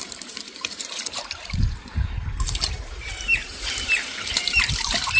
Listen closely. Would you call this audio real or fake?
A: fake